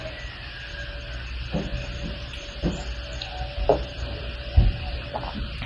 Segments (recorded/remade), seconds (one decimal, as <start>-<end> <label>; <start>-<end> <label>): 0.0-1.7 recorded; 1.7-2.7 remade; 2.7-5.7 recorded